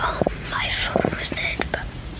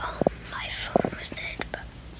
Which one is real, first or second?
second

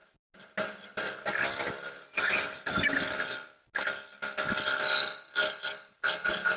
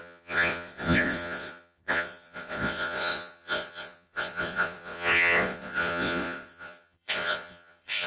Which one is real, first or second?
first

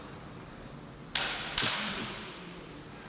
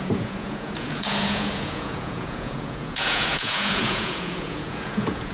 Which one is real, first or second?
first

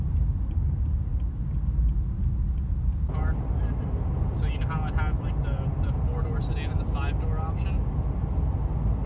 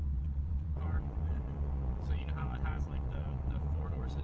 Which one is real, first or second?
first